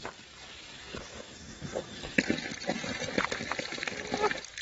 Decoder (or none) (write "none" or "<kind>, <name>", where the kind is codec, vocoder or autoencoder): none